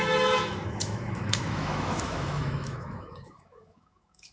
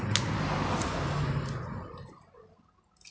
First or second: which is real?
second